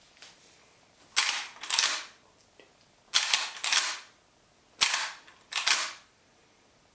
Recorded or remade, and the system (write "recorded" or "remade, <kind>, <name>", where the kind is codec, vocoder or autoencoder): recorded